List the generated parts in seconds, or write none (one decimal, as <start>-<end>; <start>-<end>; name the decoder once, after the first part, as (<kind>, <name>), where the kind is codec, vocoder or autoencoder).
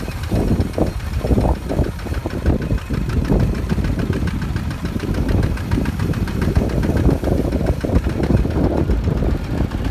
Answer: none